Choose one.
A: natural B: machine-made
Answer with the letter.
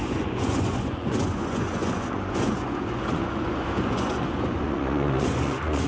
B